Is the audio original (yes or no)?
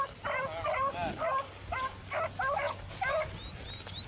yes